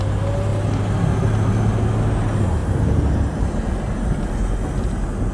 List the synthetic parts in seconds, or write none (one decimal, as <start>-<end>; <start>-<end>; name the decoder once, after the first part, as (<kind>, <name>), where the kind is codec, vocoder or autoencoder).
2.6-3.7 (vocoder, BigVGAN v2)

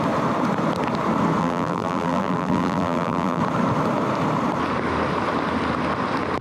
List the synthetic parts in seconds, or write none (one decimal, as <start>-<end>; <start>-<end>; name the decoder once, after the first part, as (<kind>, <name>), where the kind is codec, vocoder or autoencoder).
1.4-3.4 (vocoder, BigVGAN v2)

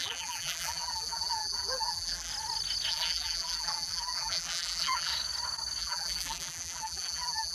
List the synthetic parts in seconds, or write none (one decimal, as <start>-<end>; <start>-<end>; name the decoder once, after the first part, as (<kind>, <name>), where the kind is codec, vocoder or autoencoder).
0.0-2.3 (vocoder, BigVGAN v2); 2.9-5.1; 5.8-7.5

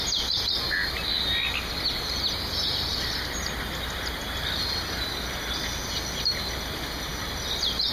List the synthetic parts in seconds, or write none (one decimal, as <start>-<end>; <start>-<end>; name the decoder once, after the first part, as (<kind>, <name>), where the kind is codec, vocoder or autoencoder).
none

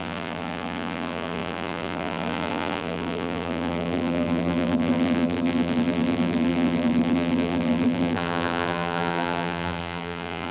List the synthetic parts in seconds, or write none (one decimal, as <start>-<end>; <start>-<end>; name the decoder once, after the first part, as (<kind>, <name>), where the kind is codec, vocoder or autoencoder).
0.0-10.5 (vocoder, BigVGAN v2)

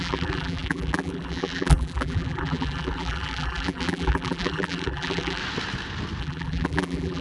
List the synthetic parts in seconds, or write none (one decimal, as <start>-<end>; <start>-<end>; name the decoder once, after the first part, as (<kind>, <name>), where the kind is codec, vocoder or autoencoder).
0.0-5.4 (vocoder, BigVGAN v2); 6.2-7.2

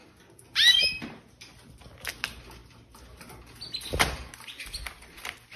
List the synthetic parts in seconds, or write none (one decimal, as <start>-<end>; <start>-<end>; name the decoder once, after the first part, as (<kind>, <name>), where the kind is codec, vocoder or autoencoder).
none